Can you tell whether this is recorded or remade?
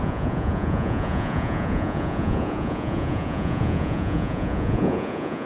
remade